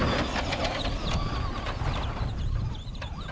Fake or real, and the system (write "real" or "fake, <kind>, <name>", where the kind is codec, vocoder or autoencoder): real